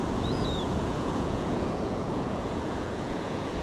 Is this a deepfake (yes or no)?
yes